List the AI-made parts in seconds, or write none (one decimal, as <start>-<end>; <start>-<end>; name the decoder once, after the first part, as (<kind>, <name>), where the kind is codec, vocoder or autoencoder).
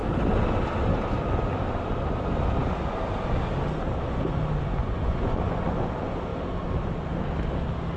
4.8-5.8 (vocoder, Vocos)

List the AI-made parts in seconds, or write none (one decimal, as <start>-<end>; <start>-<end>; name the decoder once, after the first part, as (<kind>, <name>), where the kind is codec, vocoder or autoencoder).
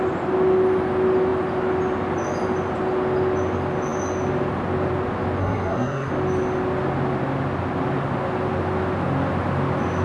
5.4-6.1 (codec, SNAC)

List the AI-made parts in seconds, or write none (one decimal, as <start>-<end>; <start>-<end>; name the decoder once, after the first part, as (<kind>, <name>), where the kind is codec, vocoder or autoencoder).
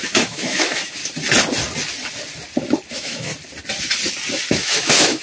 0.0-1.0 (autoencoder, DAC-VAE); 2.9-3.3; 4.5-5.2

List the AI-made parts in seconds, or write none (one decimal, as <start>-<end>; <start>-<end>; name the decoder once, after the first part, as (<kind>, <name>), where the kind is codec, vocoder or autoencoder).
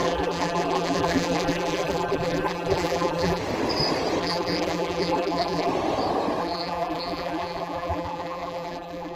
0.0-3.4 (vocoder, BigVGAN v2); 4.2-5.7; 6.4-9.2